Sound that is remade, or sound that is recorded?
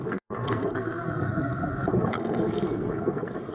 remade